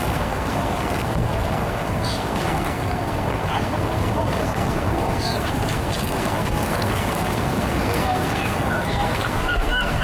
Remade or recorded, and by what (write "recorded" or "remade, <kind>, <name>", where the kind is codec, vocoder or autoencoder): remade, codec, SNAC